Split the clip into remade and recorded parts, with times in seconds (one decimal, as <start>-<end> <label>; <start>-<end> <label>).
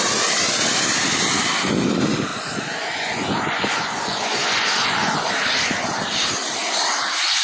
0.0-2.3 recorded; 2.3-5.3 remade; 5.3-7.4 recorded